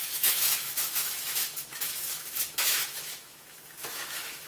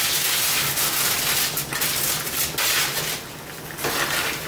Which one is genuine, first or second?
second